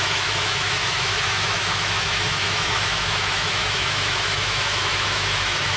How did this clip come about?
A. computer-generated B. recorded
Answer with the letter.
A